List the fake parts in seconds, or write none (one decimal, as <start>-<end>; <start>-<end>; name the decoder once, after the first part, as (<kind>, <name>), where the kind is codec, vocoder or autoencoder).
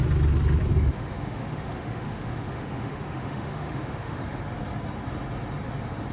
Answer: 0.7-4.4 (autoencoder, DAC-VAE)